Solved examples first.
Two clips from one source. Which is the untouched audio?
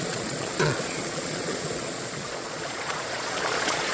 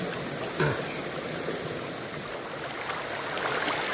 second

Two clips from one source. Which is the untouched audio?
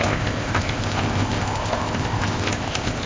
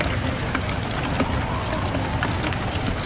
second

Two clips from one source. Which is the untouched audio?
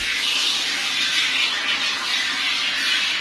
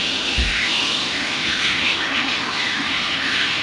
first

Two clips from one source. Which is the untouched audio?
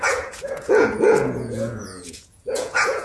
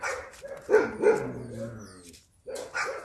second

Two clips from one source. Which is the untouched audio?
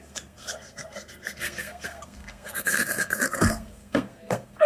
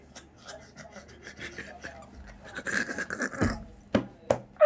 second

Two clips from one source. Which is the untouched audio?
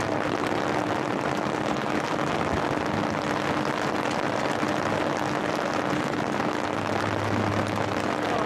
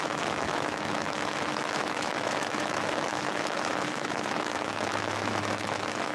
first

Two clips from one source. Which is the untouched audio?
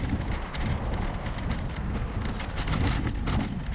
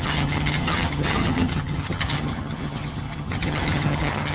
first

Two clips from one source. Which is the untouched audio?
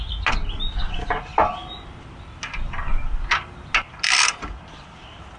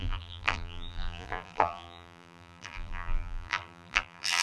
first